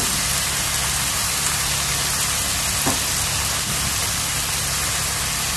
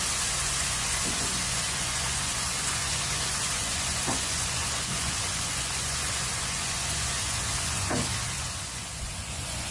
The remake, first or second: second